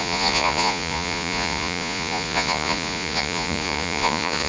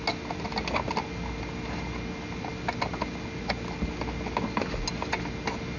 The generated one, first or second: first